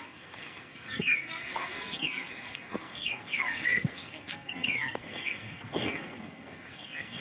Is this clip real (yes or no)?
no